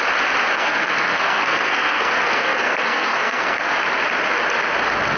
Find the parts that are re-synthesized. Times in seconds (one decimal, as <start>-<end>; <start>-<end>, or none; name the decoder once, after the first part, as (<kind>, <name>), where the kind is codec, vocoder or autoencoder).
0.5-3.6 (codec, SNAC)